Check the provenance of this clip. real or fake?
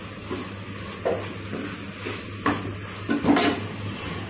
real